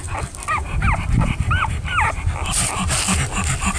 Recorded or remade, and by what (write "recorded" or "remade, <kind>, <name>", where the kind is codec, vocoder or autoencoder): recorded